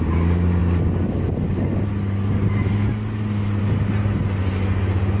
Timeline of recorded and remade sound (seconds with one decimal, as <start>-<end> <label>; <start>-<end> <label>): 0.0-5.2 recorded